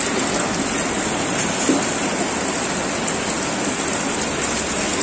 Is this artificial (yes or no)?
no